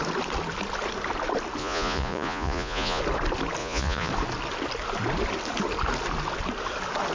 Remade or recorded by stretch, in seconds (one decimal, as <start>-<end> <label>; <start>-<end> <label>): 0.0-1.6 recorded; 1.6-3.0 remade; 3.0-3.6 recorded; 3.6-4.1 remade; 4.1-7.1 recorded